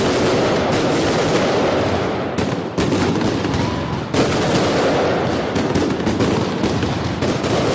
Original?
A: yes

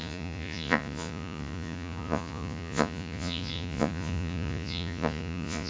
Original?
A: no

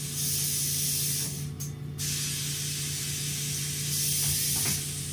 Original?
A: yes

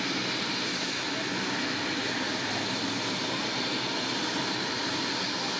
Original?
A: yes